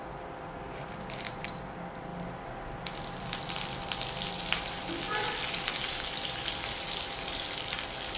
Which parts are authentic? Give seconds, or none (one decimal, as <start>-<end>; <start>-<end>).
none